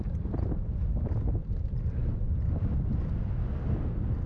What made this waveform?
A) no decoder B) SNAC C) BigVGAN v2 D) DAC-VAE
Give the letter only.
C